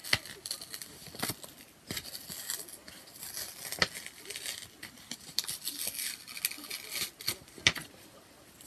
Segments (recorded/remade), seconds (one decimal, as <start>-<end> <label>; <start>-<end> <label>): 0.0-8.7 recorded